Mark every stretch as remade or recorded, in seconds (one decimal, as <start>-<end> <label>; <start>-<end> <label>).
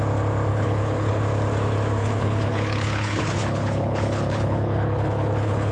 0.0-0.5 recorded; 0.5-1.2 remade; 1.2-2.0 recorded; 2.0-5.7 remade